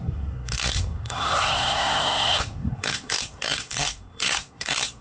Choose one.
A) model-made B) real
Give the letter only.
A